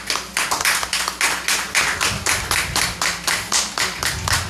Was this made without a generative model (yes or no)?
yes